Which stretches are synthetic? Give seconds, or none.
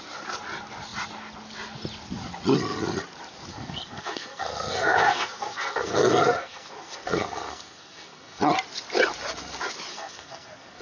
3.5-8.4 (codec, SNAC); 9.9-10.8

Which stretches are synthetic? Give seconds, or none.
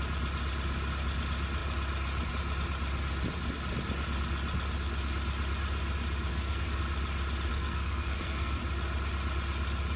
6.3-6.8 (codec, SNAC); 7.5-8.6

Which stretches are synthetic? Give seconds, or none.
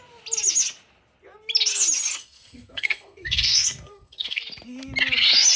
2.2-4.4 (codec, SNAC)